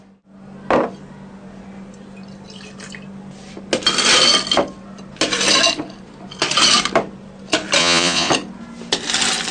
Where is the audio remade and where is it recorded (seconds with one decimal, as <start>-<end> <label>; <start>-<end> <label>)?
0.0-7.8 recorded; 7.8-8.3 remade; 8.3-9.5 recorded